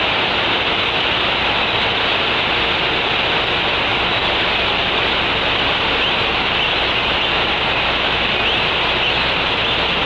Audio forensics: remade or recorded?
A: recorded